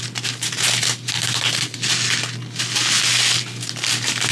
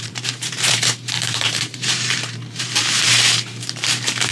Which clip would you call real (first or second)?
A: first